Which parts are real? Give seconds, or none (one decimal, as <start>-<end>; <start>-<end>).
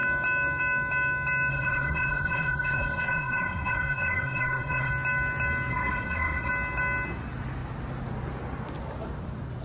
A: 0.0-1.5; 4.9-5.7; 6.5-9.6